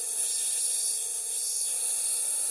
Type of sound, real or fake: real